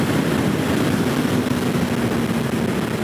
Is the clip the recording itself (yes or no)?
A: yes